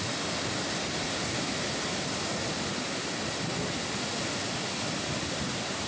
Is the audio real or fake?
real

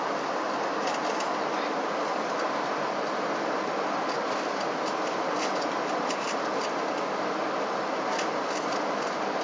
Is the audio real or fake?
real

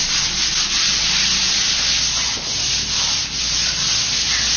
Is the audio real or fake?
real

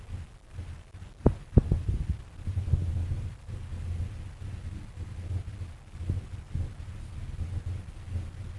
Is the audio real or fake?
real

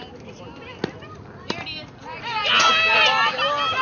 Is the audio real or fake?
real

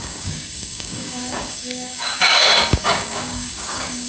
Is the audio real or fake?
fake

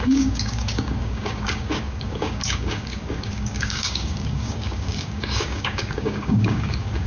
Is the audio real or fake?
fake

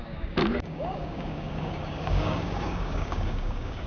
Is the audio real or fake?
fake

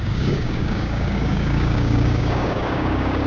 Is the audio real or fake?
fake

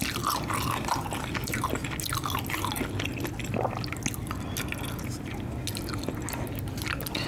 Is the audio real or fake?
real